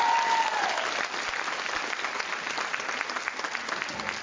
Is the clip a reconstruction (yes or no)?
no